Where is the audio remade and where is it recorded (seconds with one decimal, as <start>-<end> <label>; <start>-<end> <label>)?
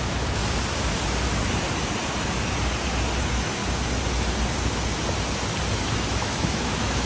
0.0-0.4 remade; 0.4-3.2 recorded; 3.2-3.6 remade; 3.6-5.8 recorded; 5.8-7.1 remade